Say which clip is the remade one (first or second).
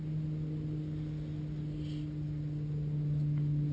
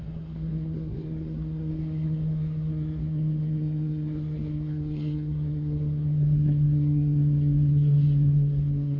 second